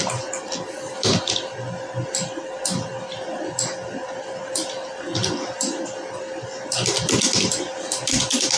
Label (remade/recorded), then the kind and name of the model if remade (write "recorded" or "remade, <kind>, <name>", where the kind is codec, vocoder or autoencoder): recorded